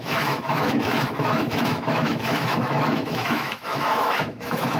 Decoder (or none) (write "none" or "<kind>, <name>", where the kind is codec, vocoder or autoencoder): autoencoder, DAC-VAE